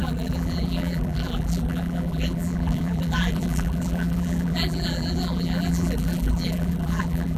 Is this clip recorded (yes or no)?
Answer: no